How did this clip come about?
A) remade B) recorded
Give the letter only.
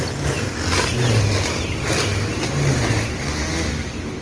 B